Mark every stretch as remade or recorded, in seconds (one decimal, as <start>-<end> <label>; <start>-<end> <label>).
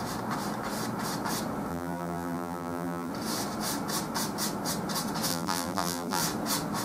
0.0-1.7 recorded; 1.7-3.1 remade; 3.1-5.3 recorded; 5.3-6.2 remade; 6.2-6.8 recorded